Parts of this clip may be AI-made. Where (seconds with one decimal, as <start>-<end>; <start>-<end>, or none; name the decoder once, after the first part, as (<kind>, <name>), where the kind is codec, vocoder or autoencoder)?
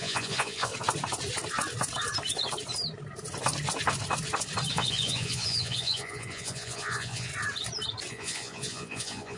0.0-0.7 (vocoder, Vocos); 4.7-7.3; 8.1-9.4